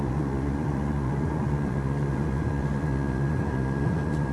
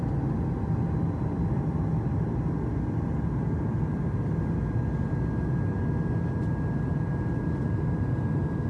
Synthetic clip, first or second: first